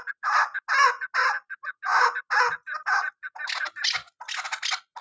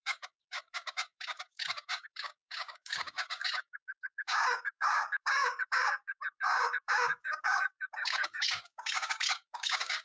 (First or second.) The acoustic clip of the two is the first